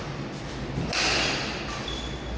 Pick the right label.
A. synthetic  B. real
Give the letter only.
B